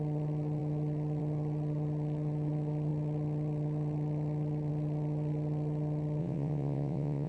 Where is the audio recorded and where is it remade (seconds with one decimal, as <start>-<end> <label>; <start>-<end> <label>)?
0.0-6.2 recorded; 6.2-7.3 remade